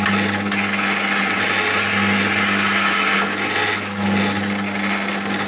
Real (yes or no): yes